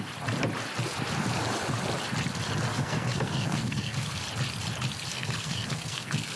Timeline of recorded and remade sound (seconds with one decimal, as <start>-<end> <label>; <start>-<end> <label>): 0.0-2.7 recorded; 2.7-4.2 remade; 4.2-5.1 recorded; 5.1-6.4 remade